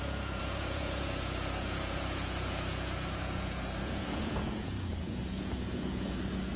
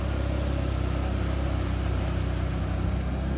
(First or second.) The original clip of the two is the second